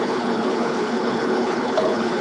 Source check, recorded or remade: remade